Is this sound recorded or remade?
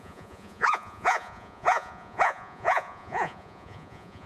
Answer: remade